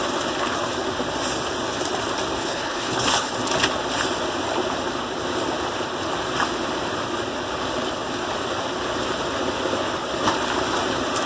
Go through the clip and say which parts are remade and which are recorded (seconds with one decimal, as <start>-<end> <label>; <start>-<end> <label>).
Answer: 0.0-2.4 recorded; 2.4-3.3 remade; 3.3-11.3 recorded